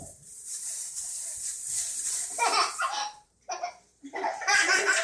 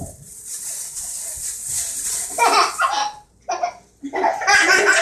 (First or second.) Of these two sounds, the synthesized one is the first